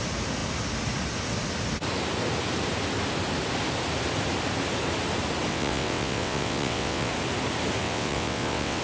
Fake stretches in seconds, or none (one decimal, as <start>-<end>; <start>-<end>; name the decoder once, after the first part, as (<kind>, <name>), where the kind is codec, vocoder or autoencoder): 5.5-7.1 (vocoder, WaveNeXt); 7.8-8.8